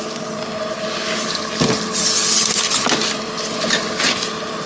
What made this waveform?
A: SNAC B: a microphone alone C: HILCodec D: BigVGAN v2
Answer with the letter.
B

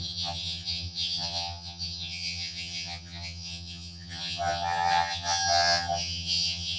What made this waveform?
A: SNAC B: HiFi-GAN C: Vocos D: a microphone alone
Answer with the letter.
B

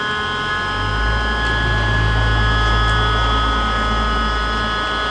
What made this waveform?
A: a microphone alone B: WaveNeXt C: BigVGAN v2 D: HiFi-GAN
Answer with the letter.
A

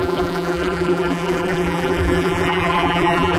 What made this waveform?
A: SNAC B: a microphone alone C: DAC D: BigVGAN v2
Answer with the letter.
D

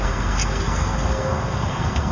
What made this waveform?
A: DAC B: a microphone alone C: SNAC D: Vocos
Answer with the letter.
C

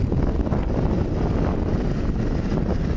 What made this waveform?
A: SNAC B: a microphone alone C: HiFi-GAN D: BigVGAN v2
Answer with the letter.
B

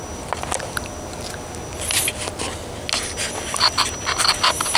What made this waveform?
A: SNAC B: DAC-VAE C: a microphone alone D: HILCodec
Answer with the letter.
C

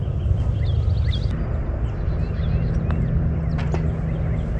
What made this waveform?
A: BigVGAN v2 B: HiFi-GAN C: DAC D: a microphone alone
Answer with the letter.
D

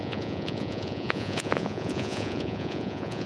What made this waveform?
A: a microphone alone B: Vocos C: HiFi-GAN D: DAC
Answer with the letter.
B